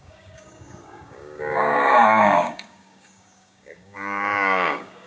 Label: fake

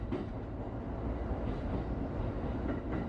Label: real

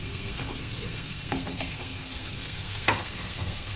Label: fake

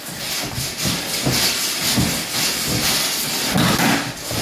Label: real